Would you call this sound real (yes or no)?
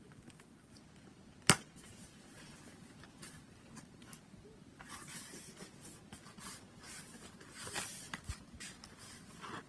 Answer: yes